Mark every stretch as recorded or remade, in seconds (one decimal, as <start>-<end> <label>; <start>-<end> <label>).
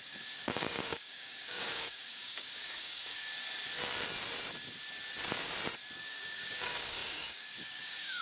0.0-3.3 remade; 3.3-6.0 recorded; 6.0-8.2 remade